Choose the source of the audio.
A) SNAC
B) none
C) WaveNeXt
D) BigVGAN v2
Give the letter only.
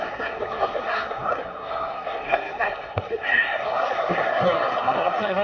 A